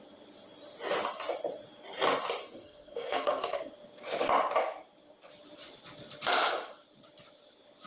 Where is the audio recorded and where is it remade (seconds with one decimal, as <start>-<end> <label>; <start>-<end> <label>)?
0.0-2.4 recorded; 2.4-3.6 remade; 3.6-7.9 recorded